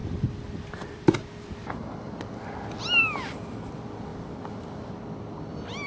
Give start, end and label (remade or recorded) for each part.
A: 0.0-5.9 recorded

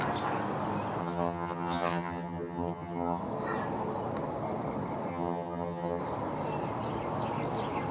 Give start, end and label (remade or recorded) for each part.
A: 0.0-1.0 recorded; 1.0-3.2 remade; 3.2-5.1 recorded; 5.1-6.0 remade; 6.0-7.9 recorded

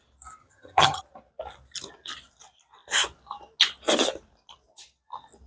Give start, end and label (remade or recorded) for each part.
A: 0.0-0.4 recorded; 0.4-1.0 remade; 1.0-5.5 recorded

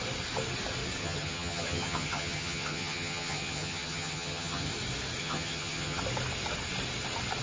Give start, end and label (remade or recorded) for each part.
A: 0.0-1.0 recorded; 1.0-4.7 remade; 4.7-5.2 recorded; 5.2-6.0 remade; 6.0-7.4 recorded

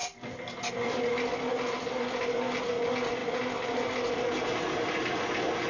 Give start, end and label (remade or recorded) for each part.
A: 0.0-5.7 recorded